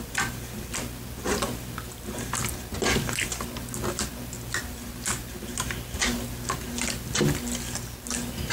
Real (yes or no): yes